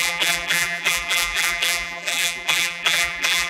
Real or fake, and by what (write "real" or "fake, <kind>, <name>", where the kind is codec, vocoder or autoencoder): fake, vocoder, BigVGAN v2